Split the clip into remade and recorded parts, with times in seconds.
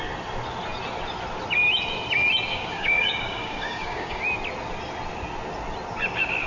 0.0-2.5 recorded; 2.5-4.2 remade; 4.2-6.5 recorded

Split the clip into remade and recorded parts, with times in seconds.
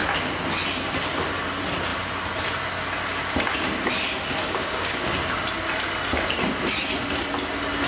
0.0-4.4 recorded; 4.4-5.2 remade; 5.2-7.9 recorded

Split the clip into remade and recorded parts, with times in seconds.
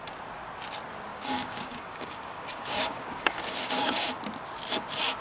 0.0-1.1 recorded; 1.1-4.2 remade; 4.2-5.2 recorded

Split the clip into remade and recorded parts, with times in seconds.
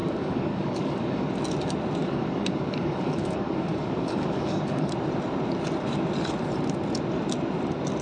0.0-1.3 remade; 1.3-2.0 recorded; 2.0-4.9 remade; 4.9-8.0 recorded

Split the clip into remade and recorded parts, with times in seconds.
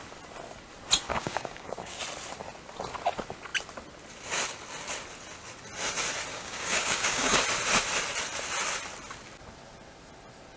0.0-1.1 recorded; 1.1-2.0 remade; 2.0-6.3 recorded; 6.3-7.4 remade; 7.4-10.6 recorded